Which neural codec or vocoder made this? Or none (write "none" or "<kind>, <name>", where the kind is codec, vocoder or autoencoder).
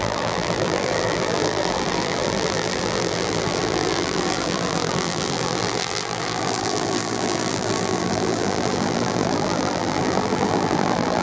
vocoder, BigVGAN v2